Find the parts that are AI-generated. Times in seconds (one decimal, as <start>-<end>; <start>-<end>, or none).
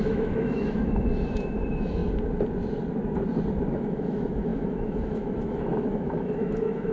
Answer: 0.0-2.0; 3.7-6.9